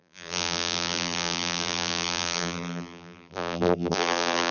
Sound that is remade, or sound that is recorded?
remade